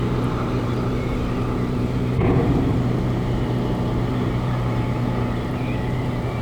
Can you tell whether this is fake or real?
fake